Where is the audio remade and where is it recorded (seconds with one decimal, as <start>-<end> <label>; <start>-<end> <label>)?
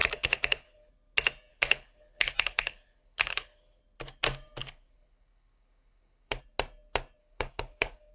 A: 0.0-0.9 remade; 0.9-1.5 recorded; 1.5-3.8 remade; 3.8-4.6 recorded; 4.6-6.4 remade; 6.4-7.2 recorded; 7.2-8.1 remade